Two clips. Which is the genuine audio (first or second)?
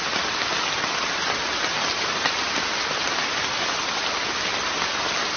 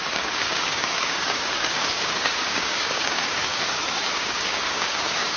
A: first